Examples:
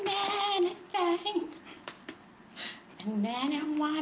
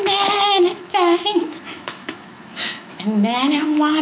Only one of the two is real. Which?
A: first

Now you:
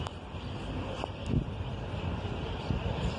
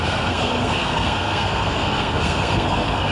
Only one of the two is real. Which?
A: first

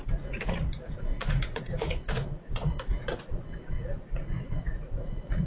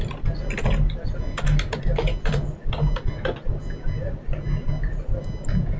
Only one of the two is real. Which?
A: second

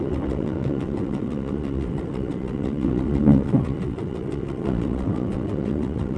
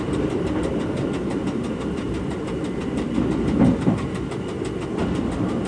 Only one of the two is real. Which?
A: second